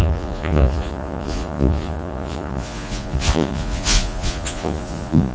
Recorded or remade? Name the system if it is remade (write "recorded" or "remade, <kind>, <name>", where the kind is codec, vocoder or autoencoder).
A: remade, vocoder, Vocos